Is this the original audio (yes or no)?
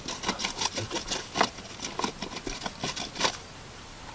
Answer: yes